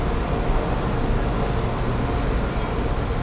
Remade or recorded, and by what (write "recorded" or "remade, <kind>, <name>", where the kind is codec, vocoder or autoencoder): recorded